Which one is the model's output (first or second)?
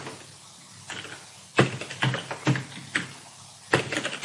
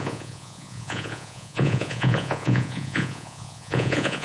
second